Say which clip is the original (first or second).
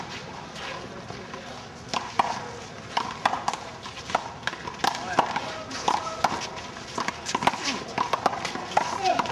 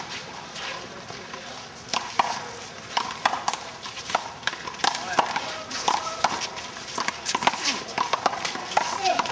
first